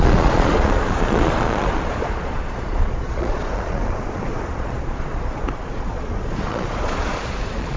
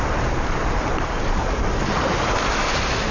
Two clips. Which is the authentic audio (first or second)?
second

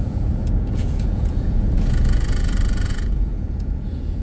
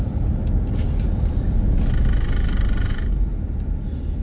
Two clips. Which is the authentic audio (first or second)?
second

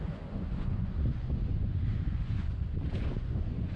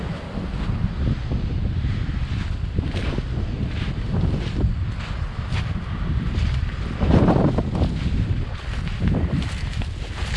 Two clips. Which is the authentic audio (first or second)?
second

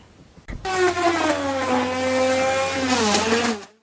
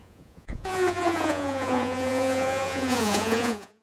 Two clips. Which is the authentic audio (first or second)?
first